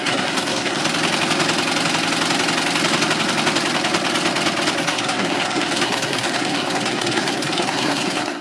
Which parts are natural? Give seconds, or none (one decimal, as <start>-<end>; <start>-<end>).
0.8-4.8